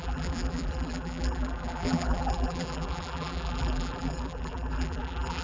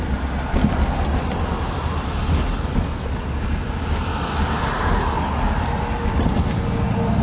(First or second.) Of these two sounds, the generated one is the first